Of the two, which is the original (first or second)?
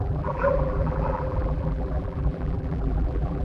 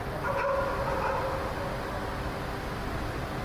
second